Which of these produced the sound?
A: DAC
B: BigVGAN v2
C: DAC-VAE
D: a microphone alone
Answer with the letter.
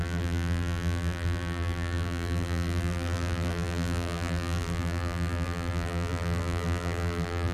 B